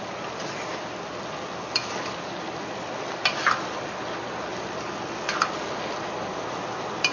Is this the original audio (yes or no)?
yes